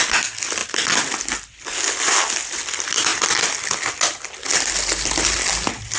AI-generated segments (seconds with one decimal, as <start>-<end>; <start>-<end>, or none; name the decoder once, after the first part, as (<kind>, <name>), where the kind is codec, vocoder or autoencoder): none